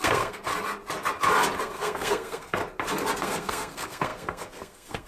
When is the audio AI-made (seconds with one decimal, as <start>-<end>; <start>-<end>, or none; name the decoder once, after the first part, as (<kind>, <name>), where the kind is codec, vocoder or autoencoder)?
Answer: 0.0-0.5 (codec, SNAC); 1.6-2.6; 3.2-5.1